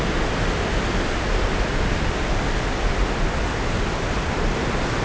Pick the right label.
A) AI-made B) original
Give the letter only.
B